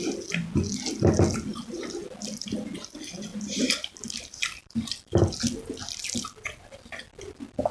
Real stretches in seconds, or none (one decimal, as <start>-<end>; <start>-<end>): 0.0-1.5; 2.7-3.3; 7.1-7.7